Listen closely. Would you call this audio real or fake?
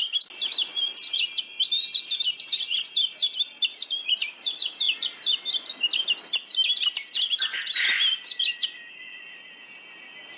real